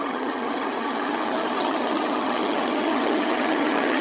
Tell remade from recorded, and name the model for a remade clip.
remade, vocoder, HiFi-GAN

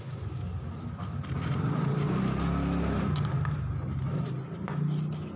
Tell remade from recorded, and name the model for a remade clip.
recorded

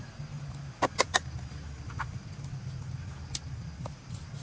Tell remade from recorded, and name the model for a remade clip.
recorded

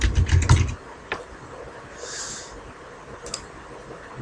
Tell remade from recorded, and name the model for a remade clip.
recorded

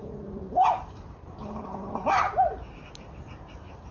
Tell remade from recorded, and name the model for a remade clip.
recorded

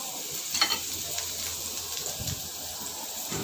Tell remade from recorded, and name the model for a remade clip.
recorded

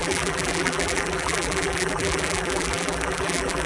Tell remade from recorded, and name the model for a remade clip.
remade, vocoder, BigVGAN v2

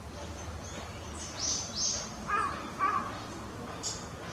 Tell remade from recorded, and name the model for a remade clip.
recorded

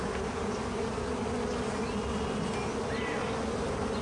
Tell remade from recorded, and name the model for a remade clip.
recorded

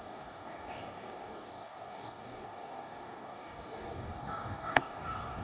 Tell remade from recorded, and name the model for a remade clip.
remade, codec, DAC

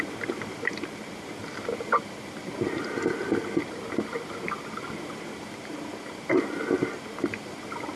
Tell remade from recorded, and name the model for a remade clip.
recorded